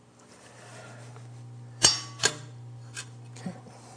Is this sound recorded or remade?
remade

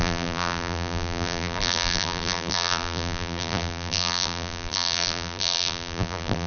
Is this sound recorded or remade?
remade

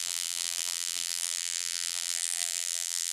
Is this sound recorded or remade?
remade